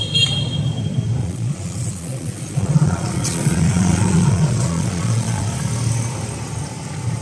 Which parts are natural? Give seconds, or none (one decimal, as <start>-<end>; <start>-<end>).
0.0-1.2; 5.5-7.2